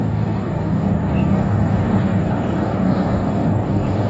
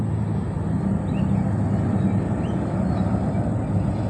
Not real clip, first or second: first